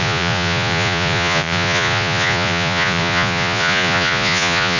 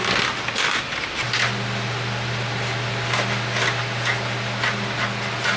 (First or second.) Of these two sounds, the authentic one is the second